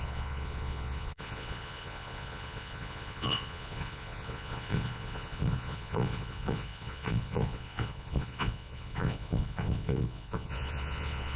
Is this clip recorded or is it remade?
remade